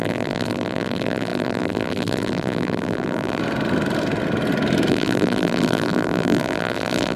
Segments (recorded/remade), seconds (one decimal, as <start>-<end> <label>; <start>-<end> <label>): 0.0-3.4 remade; 3.4-4.9 recorded; 4.9-7.2 remade